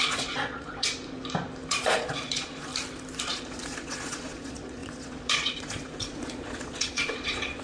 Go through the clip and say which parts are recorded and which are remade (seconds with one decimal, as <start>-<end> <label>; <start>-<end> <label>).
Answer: 0.0-0.9 remade; 0.9-1.7 recorded; 1.7-2.7 remade; 2.7-3.2 recorded; 3.2-7.6 remade